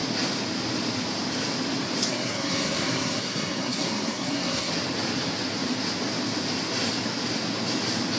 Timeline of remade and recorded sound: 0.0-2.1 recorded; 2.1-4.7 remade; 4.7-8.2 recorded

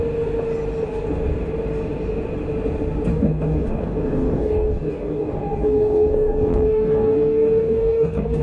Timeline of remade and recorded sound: 0.0-3.1 recorded; 3.1-8.4 remade

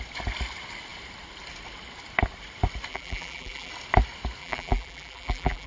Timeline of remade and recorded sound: 0.0-2.9 recorded; 2.9-3.7 remade; 3.7-4.4 recorded; 4.4-5.7 remade

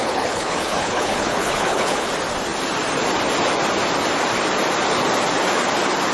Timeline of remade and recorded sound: 0.0-2.1 remade; 2.1-6.1 recorded

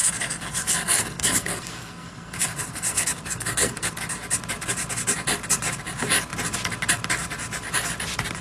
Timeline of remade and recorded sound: 0.0-4.0 remade; 4.0-8.4 recorded